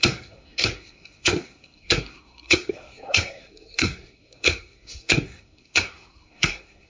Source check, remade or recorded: remade